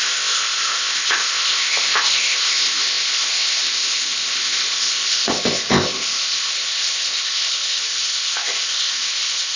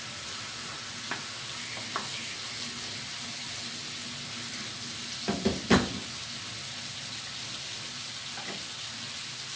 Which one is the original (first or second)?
second